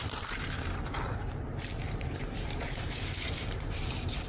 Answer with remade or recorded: remade